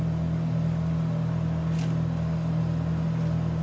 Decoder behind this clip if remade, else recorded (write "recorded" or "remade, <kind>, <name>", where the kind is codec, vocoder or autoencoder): recorded